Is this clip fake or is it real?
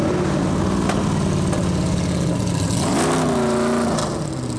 real